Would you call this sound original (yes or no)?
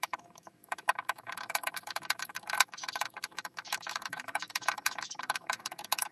no